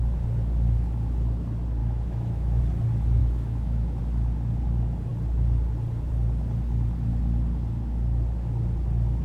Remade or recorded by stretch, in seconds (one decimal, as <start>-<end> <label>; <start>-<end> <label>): 0.0-1.8 recorded; 1.8-2.6 remade; 2.6-3.2 recorded; 3.2-4.0 remade; 4.0-9.2 recorded